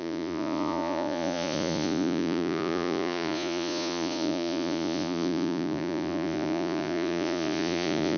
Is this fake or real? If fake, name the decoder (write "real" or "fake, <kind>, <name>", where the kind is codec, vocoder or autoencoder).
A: fake, vocoder, Vocos